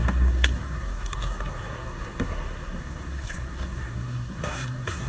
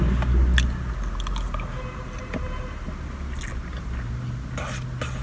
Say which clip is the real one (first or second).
second